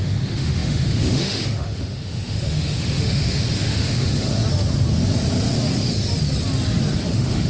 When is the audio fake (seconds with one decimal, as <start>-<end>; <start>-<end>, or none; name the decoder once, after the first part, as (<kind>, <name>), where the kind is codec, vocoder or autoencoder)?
0.0-4.4 (autoencoder, DAC-VAE); 7.1-7.5